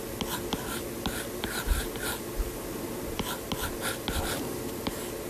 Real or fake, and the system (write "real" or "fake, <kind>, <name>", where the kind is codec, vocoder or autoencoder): real